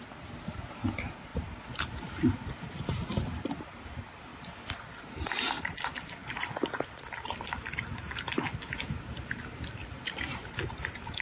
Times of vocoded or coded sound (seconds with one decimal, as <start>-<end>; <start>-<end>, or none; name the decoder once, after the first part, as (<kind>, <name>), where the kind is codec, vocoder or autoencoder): 6.2-8.1 (vocoder, BigVGAN v2); 9.8-10.5